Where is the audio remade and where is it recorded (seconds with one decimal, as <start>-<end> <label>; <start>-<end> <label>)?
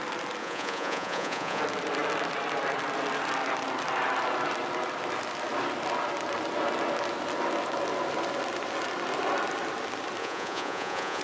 0.0-0.4 recorded; 0.4-1.6 remade; 1.6-10.2 recorded; 10.2-11.2 remade